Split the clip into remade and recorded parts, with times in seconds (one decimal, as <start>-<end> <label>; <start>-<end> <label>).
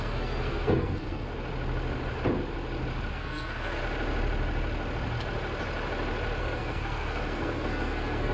0.0-1.3 remade; 1.3-3.1 recorded; 3.1-3.8 remade; 3.8-6.4 recorded; 6.4-8.3 remade